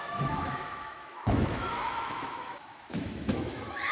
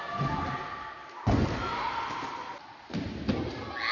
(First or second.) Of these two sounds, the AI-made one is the first